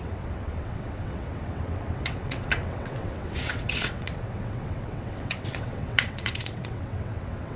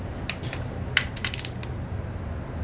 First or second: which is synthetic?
first